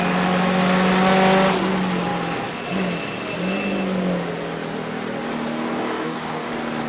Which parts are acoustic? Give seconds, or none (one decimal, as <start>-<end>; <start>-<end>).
0.0-5.7; 6.5-6.9